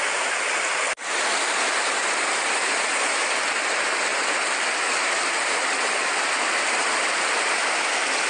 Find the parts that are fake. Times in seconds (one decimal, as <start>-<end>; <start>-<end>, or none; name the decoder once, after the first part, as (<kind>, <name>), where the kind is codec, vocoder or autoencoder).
none